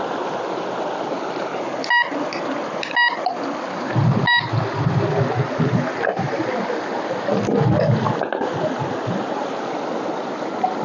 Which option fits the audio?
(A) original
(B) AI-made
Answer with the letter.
A